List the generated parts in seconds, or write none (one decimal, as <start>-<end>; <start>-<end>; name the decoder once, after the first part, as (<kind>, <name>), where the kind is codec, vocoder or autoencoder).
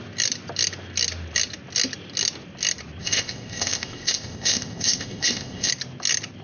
3.0-5.7 (codec, ZipCodec)